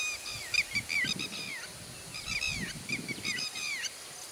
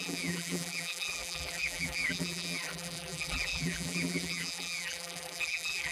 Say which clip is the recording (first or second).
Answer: first